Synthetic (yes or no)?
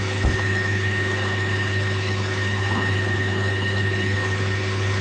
yes